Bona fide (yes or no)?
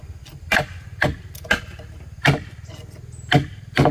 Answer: yes